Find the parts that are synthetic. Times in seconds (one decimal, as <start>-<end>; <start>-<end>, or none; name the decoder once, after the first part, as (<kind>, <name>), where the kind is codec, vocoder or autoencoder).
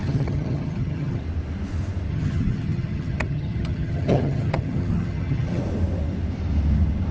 0.0-1.2 (vocoder, HiFi-GAN); 2.1-5.6